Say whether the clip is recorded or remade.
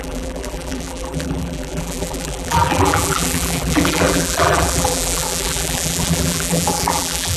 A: remade